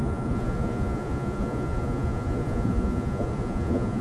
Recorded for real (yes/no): no